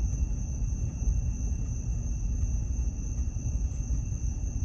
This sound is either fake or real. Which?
real